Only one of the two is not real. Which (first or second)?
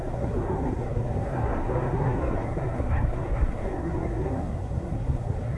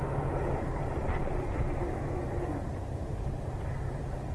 first